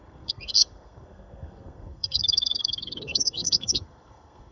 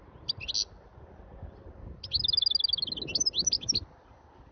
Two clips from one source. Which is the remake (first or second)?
first